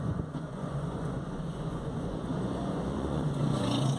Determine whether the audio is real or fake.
fake